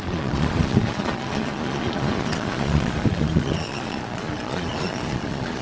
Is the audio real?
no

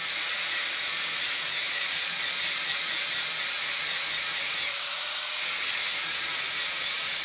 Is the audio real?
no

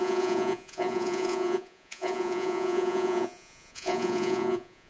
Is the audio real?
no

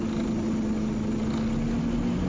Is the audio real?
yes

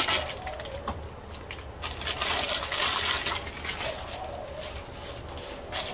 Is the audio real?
yes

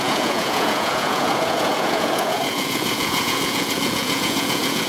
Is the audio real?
no